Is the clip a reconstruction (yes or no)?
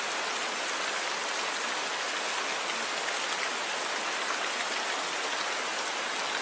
no